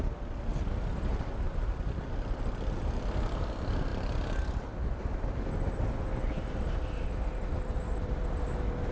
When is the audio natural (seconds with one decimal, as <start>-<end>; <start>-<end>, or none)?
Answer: 0.0-3.9; 5.4-8.9